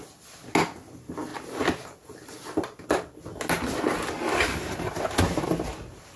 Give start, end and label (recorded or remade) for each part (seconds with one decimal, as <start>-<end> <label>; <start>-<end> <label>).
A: 0.0-6.2 recorded